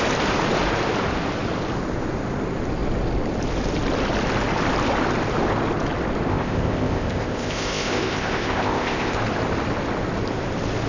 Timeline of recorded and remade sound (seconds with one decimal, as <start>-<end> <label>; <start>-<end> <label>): 0.0-6.3 recorded; 6.3-9.2 remade; 9.2-10.9 recorded